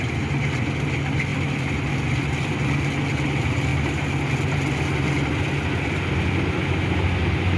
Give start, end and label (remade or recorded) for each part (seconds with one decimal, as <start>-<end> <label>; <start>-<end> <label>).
0.0-1.3 recorded; 1.3-1.9 remade; 1.9-7.6 recorded